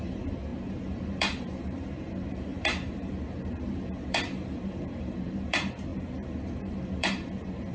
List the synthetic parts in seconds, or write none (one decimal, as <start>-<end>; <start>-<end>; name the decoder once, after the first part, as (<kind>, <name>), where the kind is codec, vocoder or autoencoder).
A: 0.0-7.7 (vocoder, BigVGAN v2)